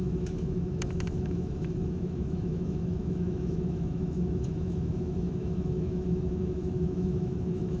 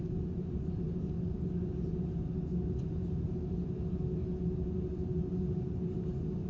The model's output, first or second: first